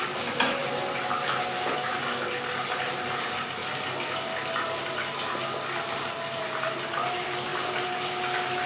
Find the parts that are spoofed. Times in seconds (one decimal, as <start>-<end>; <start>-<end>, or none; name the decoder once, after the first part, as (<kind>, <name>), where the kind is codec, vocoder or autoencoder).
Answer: none